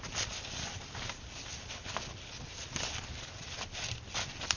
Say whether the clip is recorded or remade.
recorded